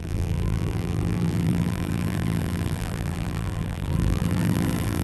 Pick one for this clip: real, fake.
fake